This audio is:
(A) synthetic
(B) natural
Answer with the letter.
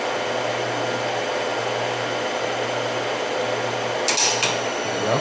B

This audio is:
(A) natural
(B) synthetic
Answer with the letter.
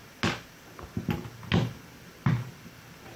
A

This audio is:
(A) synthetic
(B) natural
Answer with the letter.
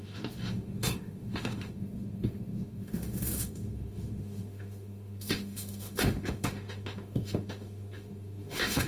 A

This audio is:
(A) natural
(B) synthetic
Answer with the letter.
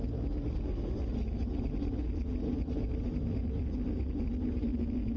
A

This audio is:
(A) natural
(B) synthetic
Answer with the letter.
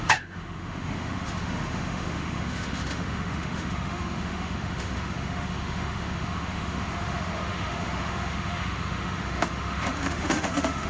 B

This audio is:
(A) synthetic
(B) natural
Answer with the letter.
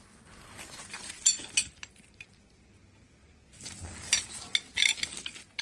B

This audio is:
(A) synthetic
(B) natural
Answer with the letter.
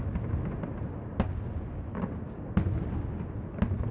B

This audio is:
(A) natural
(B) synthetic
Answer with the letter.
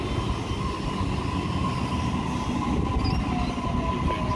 A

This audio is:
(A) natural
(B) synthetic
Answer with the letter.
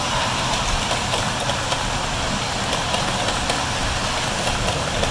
A